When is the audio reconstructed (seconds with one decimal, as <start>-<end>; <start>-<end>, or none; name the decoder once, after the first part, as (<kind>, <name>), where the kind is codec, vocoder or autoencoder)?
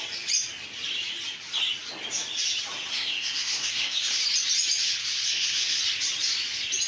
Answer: 2.9-4.2 (codec, SNAC); 5.0-5.8